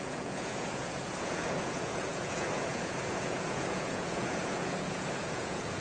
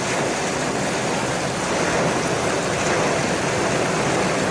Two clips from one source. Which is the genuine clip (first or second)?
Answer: second